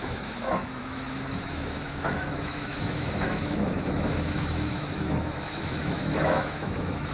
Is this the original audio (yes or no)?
no